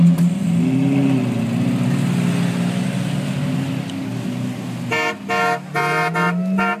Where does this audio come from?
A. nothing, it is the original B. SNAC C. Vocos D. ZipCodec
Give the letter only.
A